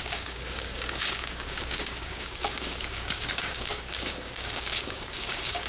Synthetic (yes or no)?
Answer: yes